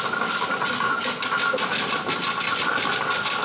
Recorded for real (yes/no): yes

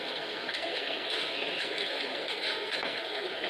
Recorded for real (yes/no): no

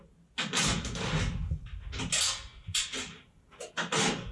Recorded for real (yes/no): yes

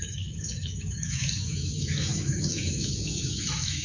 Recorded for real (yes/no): no